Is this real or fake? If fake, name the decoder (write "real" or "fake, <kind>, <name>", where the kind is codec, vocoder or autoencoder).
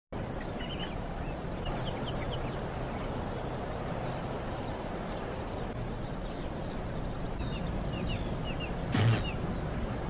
real